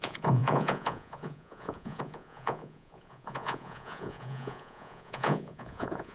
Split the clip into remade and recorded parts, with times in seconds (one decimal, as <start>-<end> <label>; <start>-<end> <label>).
0.0-6.1 remade